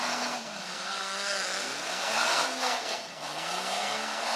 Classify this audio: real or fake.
fake